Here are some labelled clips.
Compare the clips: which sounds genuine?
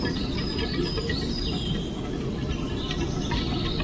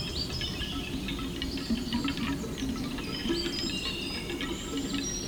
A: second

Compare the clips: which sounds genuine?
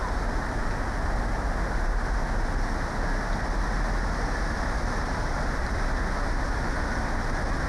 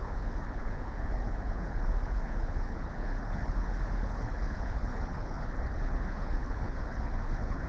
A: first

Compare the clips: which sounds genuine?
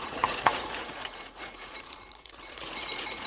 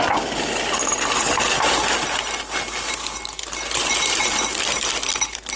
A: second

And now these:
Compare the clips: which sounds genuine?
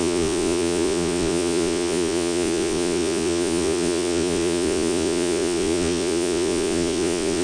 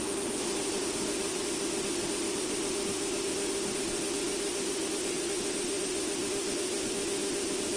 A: second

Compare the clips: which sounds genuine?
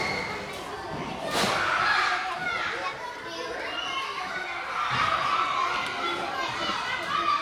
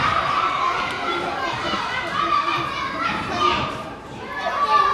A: first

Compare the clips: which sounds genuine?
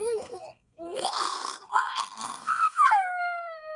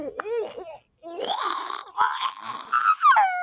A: second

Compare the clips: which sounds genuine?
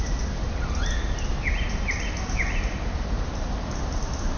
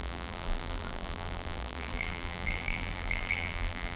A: first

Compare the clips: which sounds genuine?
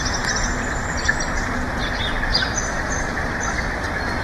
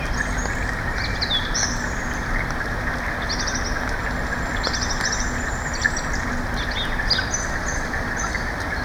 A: second